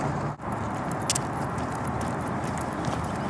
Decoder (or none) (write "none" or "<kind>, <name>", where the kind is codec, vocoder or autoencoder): none